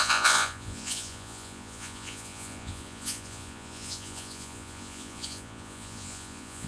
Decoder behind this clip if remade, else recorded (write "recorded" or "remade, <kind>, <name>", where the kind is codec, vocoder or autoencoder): remade, vocoder, Vocos